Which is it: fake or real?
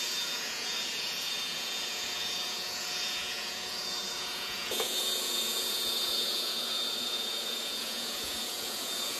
fake